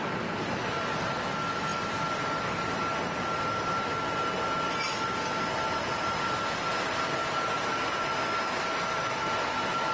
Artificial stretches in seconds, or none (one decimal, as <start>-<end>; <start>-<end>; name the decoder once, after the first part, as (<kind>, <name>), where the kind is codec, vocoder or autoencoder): none